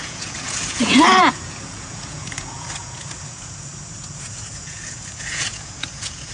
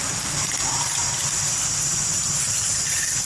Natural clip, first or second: second